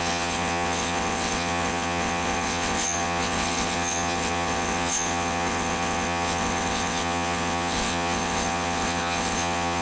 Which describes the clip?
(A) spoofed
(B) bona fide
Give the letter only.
A